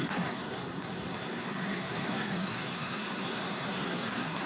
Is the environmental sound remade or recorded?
remade